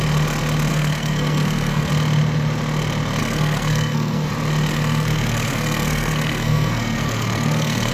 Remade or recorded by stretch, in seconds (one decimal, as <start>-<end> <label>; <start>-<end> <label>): 0.0-0.7 recorded; 0.7-1.9 remade; 1.9-3.2 recorded; 3.2-4.3 remade; 4.3-4.7 recorded; 4.7-7.9 remade